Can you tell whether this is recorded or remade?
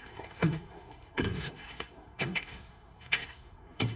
remade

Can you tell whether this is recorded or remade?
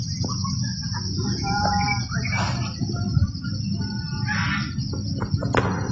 recorded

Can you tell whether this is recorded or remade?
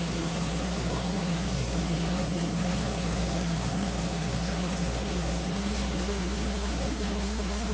remade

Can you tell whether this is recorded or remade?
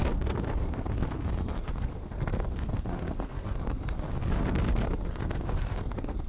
remade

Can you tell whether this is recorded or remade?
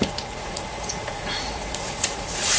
remade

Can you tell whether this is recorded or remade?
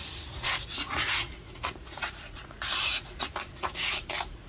remade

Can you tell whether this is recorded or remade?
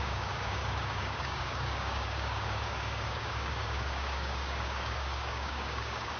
remade